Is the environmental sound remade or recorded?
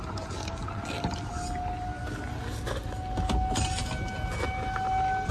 recorded